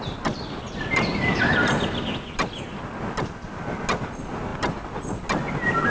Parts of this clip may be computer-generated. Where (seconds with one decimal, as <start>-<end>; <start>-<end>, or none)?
none